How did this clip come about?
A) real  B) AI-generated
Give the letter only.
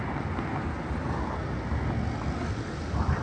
A